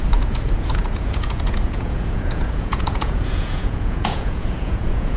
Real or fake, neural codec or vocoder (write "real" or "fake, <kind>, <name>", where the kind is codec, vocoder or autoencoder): fake, vocoder, Vocos